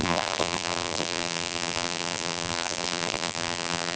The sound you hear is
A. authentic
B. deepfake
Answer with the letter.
B